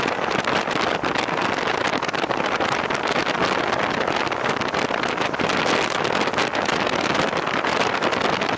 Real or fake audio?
real